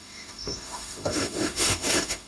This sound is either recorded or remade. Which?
remade